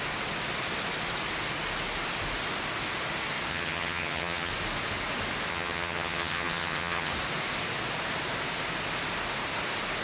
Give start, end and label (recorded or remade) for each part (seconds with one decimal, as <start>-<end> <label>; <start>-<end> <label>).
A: 0.0-3.5 recorded; 3.5-4.5 remade; 4.5-5.5 recorded; 5.5-7.1 remade; 7.1-10.0 recorded